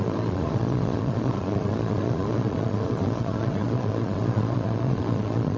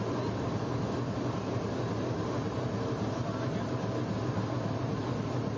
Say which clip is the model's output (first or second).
first